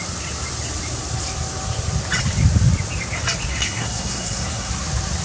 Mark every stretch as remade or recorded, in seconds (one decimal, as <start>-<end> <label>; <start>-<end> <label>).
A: 0.0-3.5 recorded; 3.5-4.7 remade; 4.7-5.2 recorded